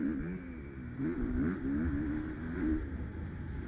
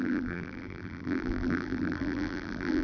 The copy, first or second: second